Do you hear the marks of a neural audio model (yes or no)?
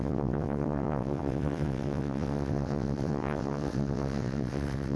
yes